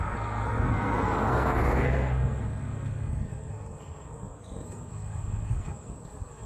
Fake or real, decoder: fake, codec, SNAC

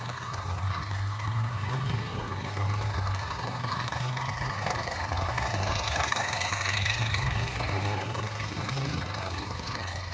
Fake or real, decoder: fake, codec, SNAC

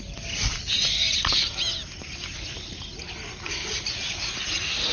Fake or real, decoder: real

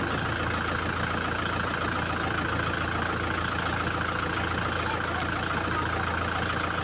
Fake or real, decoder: real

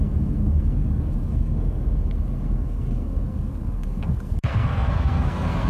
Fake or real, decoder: fake, codec, SNAC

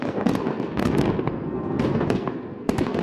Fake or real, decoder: fake, codec, SNAC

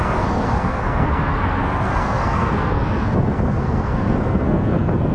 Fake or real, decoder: fake, codec, SNAC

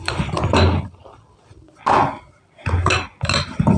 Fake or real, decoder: real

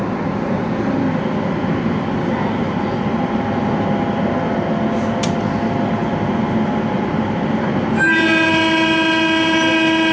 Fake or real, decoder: real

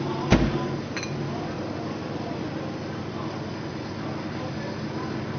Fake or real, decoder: real